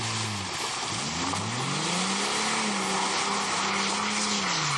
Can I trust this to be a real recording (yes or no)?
yes